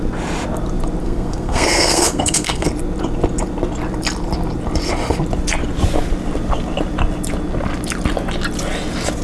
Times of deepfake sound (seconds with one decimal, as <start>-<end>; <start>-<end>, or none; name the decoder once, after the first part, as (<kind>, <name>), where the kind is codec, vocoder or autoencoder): 1.0-2.7 (codec, SNAC)